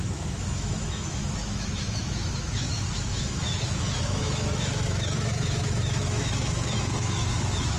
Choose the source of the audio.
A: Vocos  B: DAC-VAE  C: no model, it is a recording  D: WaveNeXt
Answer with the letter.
B